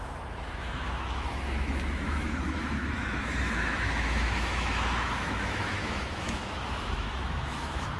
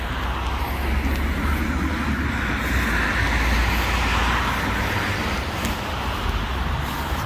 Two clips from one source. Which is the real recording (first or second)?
second